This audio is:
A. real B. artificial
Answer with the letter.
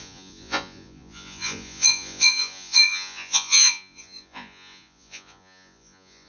B